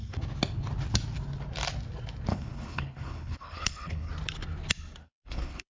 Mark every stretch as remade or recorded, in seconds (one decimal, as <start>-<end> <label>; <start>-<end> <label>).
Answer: 0.0-2.3 recorded; 2.3-4.1 remade; 4.1-5.0 recorded; 5.0-5.7 remade

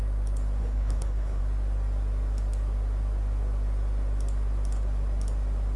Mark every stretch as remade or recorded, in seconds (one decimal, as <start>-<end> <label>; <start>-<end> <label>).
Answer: 0.0-0.6 recorded; 0.6-1.4 remade; 1.4-5.8 recorded